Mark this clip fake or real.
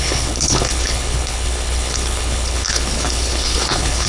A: fake